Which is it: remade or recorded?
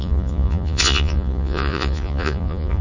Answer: remade